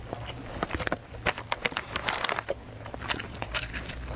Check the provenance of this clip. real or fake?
real